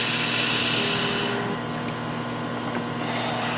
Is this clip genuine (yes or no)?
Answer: yes